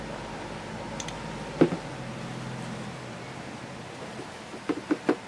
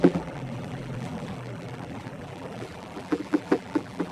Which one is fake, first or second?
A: second